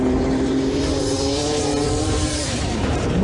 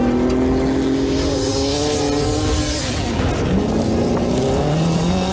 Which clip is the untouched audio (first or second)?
second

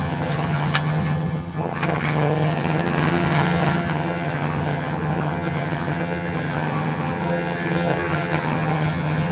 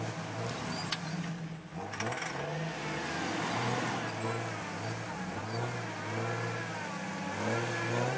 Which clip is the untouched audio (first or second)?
second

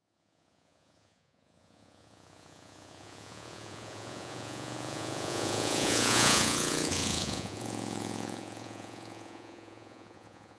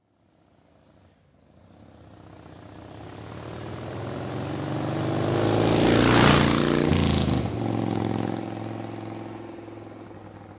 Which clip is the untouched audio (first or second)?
second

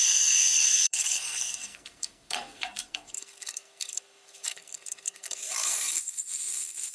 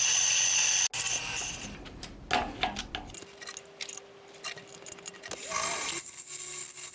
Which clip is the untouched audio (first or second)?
second